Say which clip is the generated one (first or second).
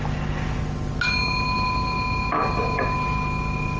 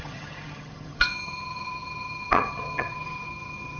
second